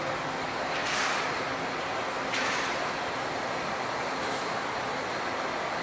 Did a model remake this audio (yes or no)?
no